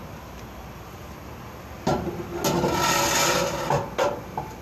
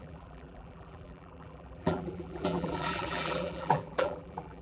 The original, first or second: first